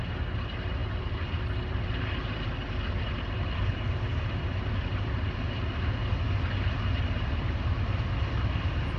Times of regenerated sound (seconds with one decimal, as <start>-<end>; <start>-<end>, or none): 0.8-5.8